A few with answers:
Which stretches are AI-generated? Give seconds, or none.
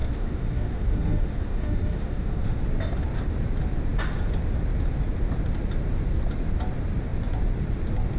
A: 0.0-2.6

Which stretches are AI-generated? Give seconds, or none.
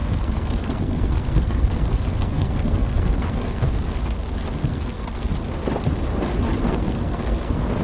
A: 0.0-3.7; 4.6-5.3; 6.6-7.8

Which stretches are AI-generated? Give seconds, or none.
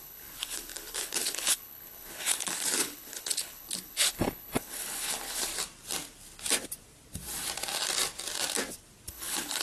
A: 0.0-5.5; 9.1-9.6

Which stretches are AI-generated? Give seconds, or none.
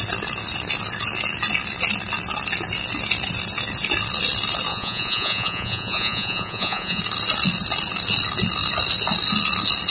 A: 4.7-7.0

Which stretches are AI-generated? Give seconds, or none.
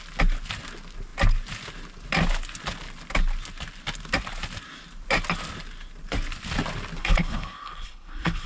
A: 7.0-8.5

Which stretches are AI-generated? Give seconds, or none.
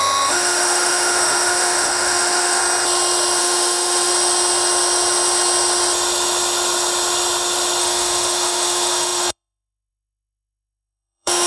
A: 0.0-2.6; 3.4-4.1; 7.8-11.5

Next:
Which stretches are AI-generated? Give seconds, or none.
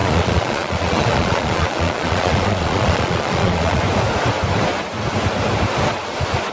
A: 0.0-3.8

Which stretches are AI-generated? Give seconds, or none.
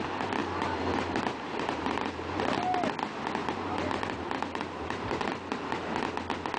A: 0.4-2.4; 3.4-5.9